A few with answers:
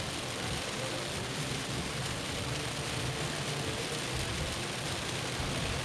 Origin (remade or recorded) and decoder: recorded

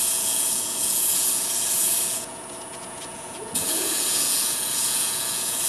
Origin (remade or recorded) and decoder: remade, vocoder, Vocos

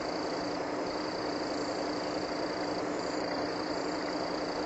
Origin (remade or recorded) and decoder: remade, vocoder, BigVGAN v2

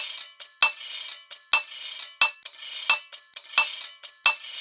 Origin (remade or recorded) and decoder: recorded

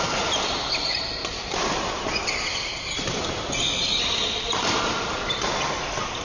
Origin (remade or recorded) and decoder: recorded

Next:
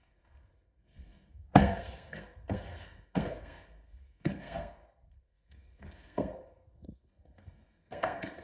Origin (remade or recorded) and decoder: remade, codec, SNAC